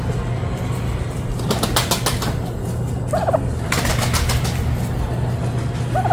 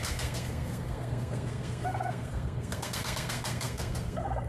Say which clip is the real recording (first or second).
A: first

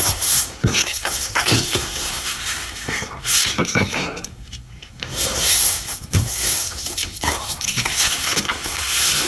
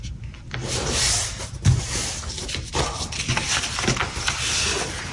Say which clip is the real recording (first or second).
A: second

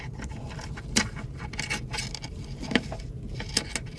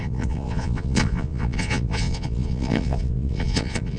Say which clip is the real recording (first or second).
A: first